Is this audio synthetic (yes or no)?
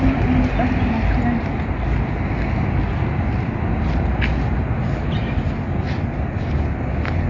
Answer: no